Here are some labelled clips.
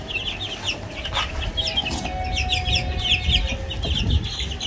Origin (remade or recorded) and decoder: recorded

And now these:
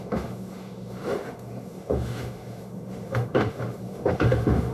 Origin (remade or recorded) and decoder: remade, autoencoder, DAC-VAE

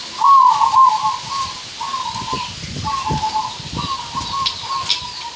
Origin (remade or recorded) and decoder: recorded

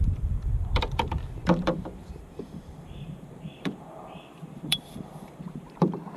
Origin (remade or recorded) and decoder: remade, vocoder, BigVGAN v2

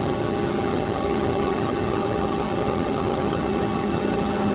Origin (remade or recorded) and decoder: remade, vocoder, HiFi-GAN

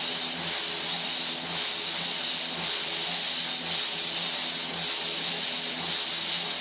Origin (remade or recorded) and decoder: recorded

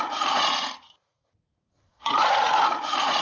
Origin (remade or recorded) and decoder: remade, vocoder, Vocos